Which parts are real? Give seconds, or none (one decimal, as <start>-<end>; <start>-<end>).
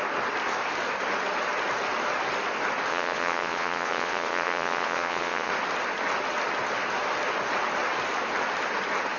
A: 0.0-2.9; 5.5-9.2